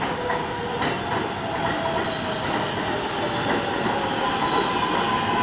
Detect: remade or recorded recorded